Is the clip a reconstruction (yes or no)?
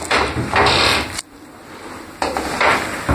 no